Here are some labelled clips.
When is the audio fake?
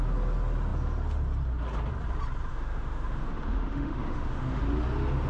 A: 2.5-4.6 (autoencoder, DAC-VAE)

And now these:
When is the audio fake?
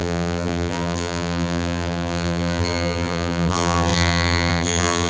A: 0.0-5.1 (vocoder, BigVGAN v2)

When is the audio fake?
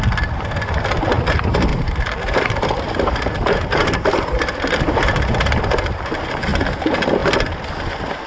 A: 1.7-6.4 (vocoder, BigVGAN v2)